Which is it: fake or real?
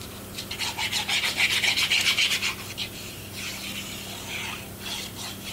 real